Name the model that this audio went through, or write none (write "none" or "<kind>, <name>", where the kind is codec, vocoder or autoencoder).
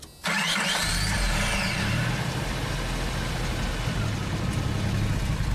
none